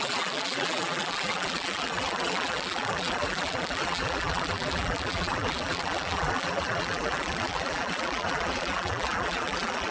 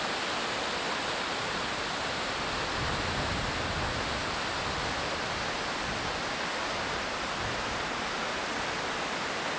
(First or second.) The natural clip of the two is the second